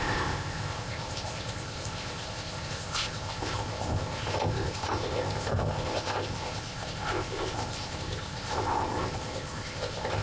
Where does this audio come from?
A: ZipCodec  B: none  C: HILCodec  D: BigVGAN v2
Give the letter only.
A